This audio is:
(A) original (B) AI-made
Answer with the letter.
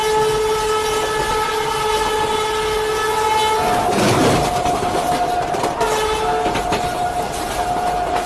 A